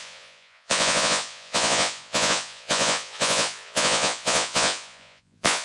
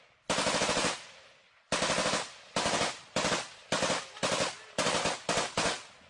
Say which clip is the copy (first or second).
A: first